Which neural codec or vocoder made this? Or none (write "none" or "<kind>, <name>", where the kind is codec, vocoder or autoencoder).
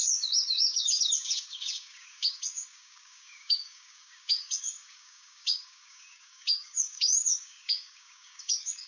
codec, DAC